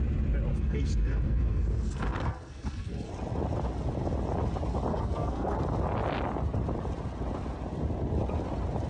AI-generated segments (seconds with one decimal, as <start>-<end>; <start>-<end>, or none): 0.5-3.1; 4.9-5.6